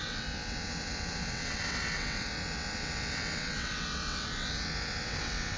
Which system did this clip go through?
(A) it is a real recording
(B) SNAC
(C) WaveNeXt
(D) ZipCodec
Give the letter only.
C